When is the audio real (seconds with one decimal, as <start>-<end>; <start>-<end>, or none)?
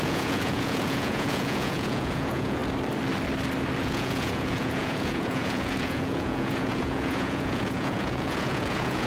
2.6-3.8